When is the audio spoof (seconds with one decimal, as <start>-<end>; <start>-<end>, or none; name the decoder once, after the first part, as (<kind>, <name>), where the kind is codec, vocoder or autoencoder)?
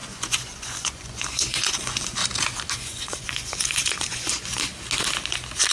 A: 0.0-2.2 (vocoder, Vocos); 2.7-4.7